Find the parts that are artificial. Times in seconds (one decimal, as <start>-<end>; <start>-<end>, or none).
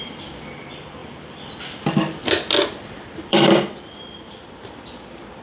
1.0-3.5